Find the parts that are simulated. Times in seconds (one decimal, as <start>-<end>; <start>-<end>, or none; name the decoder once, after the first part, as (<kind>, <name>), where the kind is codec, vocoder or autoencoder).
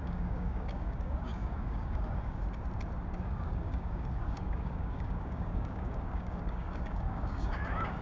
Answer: 0.0-2.4 (codec, DAC); 3.2-8.0